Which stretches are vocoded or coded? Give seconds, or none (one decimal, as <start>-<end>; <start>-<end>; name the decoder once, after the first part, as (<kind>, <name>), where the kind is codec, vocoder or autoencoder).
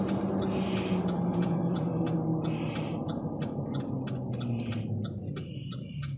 1.3-1.9 (vocoder, Vocos)